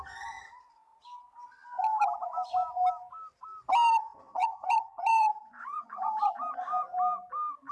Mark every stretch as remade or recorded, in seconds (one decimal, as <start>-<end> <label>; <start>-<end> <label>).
0.0-4.4 recorded; 4.4-6.3 remade; 6.3-7.7 recorded